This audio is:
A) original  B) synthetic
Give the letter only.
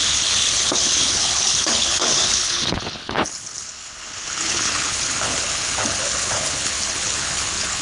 B